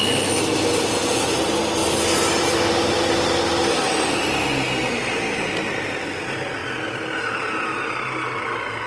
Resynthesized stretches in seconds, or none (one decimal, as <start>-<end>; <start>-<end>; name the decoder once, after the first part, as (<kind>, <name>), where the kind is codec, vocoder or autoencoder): none